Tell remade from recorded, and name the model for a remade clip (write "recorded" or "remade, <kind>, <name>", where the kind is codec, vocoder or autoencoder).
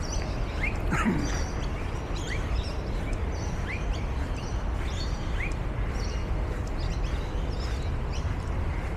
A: recorded